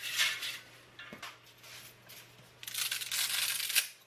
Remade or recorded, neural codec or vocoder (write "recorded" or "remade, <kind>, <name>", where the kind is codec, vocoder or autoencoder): recorded